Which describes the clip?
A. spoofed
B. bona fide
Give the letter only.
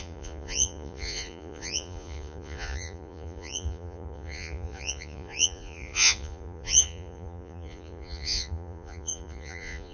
A